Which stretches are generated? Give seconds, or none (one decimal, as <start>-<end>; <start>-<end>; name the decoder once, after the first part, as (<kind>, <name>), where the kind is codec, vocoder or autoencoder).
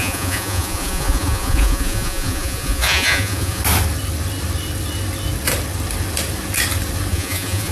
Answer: 0.0-3.6 (vocoder, Vocos); 7.1-7.7